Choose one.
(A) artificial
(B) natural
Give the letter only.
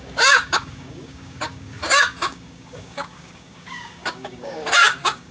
A